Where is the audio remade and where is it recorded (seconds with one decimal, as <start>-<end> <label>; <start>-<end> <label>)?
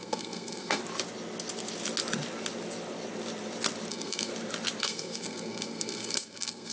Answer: 0.0-0.8 remade; 0.8-3.9 recorded; 3.9-4.3 remade; 4.3-4.8 recorded; 4.8-6.7 remade